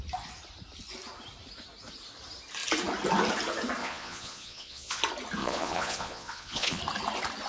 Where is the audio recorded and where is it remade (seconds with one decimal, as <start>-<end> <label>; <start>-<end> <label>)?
0.0-3.8 recorded; 3.8-5.0 remade; 5.0-5.4 recorded; 5.4-6.8 remade; 6.8-7.5 recorded